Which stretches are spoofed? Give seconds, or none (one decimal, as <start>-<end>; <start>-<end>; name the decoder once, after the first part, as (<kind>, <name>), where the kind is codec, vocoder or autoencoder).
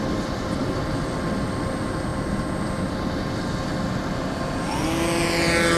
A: none